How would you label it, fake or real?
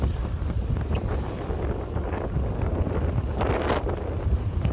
real